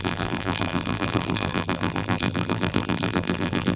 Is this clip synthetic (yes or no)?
yes